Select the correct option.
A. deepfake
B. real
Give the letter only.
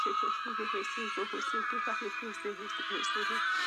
B